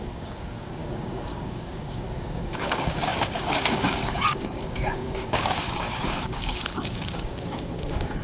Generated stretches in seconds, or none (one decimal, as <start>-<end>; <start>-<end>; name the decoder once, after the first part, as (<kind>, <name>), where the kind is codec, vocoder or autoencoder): 0.0-8.2 (codec, DAC)